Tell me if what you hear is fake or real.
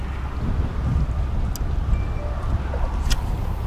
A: real